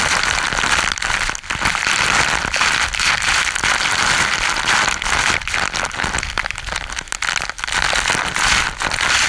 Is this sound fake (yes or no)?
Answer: no